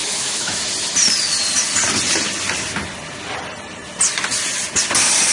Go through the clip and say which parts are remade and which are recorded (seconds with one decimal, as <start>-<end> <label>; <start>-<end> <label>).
0.0-0.6 remade; 0.6-5.3 recorded